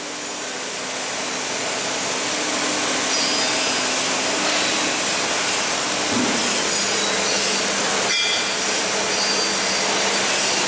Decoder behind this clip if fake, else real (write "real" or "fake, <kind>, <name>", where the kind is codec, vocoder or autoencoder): real